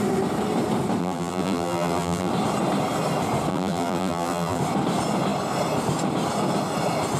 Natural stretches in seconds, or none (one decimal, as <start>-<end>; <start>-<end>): 0.0-1.0; 2.3-3.5; 4.6-7.2